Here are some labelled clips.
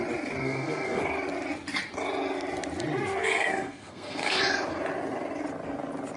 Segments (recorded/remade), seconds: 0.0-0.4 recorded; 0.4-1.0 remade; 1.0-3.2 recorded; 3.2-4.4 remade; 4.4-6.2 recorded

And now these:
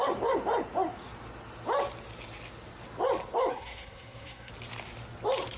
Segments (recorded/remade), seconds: 0.0-3.5 recorded; 3.5-4.5 remade; 4.5-5.6 recorded

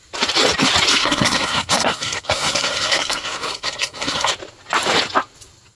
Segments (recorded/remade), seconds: 0.0-0.9 recorded; 0.9-4.3 remade; 4.3-5.7 recorded

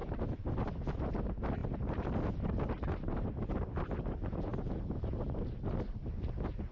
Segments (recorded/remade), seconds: 0.0-6.7 recorded